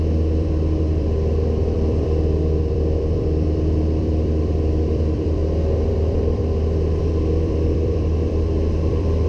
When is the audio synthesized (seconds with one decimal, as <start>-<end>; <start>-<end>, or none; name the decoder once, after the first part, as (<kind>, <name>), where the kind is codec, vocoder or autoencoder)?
0.0-5.4 (vocoder, BigVGAN v2); 5.9-6.4; 7.0-9.3